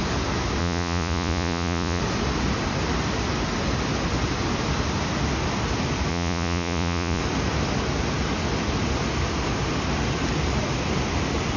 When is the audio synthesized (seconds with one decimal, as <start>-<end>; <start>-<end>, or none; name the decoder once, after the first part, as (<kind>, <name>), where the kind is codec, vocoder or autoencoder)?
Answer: 0.6-2.0 (vocoder, Vocos); 6.1-7.2